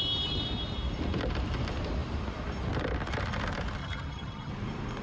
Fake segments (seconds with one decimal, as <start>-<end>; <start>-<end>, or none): 3.8-4.5